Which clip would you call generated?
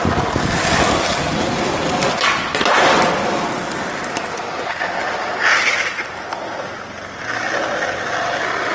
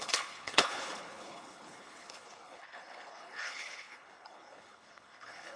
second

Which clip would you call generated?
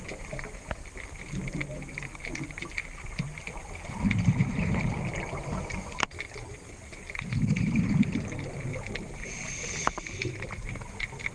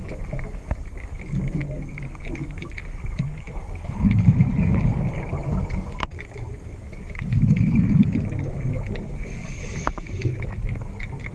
second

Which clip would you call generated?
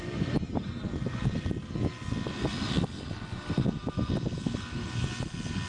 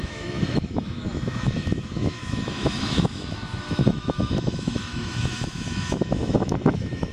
second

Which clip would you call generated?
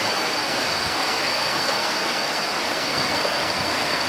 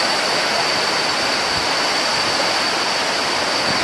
first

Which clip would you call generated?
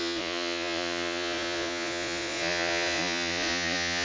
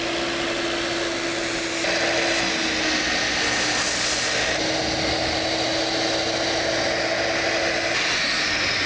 first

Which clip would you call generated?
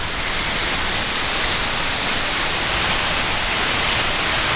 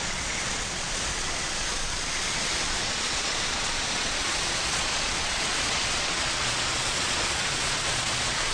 second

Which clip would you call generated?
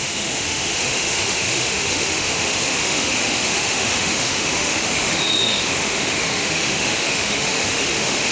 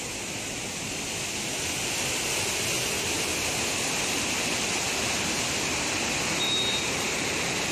first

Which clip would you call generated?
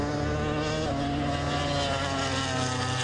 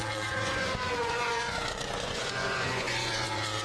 second